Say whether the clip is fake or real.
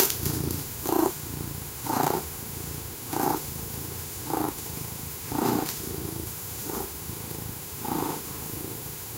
fake